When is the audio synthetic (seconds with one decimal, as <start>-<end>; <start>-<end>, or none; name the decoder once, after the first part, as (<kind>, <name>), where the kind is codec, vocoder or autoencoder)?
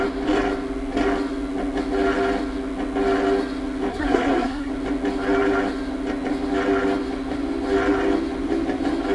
3.9-4.7 (codec, SNAC)